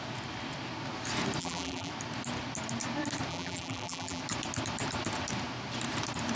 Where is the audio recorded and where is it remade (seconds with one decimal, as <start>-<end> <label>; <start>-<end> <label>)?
0.0-1.4 recorded; 1.4-1.9 remade; 1.9-3.3 recorded; 3.3-4.2 remade; 4.2-6.4 recorded

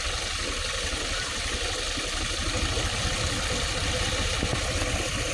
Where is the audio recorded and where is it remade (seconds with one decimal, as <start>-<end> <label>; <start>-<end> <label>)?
0.0-0.9 recorded; 0.9-1.6 remade; 1.6-5.3 recorded

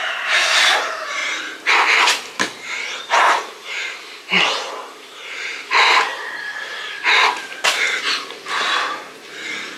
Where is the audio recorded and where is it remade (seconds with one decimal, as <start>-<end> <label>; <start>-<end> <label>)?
0.0-1.2 remade; 1.2-2.0 recorded; 2.0-9.8 remade